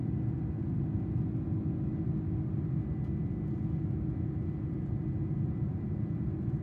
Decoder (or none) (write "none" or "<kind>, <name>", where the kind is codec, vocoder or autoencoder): none